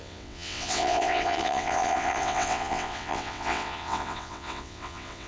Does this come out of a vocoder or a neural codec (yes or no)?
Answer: yes